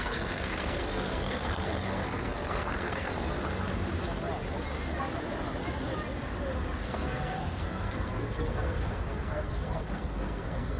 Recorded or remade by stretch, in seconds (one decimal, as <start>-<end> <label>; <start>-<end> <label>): 0.0-3.1 remade; 3.1-6.8 recorded; 6.8-10.8 remade